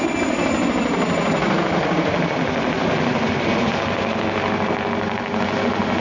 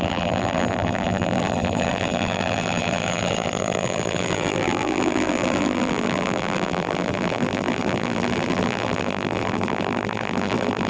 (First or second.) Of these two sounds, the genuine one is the first